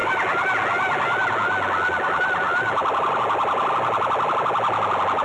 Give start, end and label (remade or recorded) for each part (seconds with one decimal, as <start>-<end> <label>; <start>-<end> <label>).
0.0-5.2 recorded